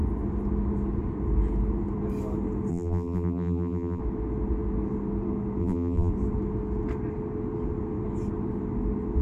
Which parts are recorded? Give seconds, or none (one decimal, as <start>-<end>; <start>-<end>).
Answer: 0.0-2.7; 4.0-5.6; 6.1-9.2